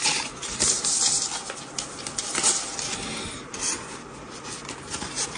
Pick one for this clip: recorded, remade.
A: remade